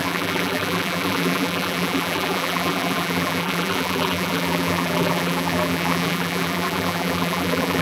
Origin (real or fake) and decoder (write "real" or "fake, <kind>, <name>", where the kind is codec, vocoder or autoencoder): fake, vocoder, BigVGAN v2